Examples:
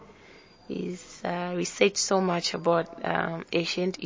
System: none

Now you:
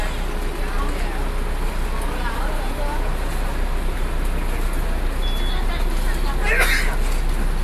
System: none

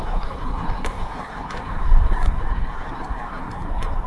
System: codec, SNAC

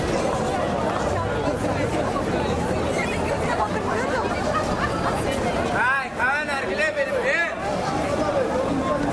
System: none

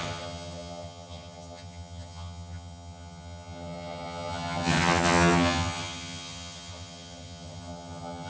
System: vocoder, HiFi-GAN